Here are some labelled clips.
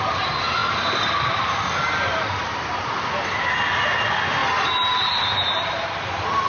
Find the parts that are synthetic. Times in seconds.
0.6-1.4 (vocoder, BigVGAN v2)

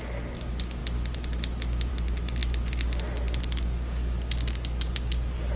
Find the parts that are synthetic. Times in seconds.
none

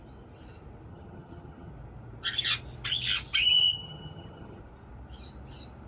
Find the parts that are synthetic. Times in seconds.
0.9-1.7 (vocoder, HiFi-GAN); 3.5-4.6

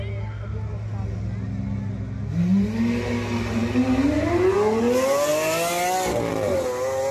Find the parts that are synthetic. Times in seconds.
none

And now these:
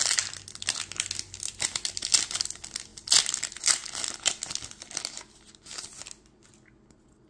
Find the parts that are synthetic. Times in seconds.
none

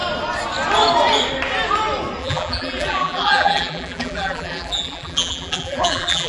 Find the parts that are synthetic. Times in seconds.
2.2-6.3 (vocoder, BigVGAN v2)

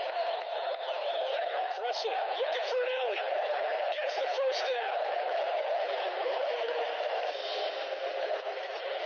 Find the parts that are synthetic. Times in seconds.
0.0-6.9 (codec, HILCodec); 8.2-9.1